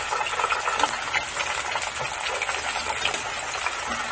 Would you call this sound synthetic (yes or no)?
no